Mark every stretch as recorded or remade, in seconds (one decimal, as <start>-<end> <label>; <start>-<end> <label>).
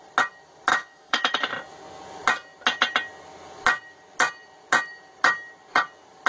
0.0-0.7 recorded; 0.7-1.5 remade; 1.5-6.3 recorded